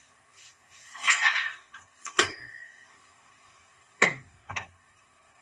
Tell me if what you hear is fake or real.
fake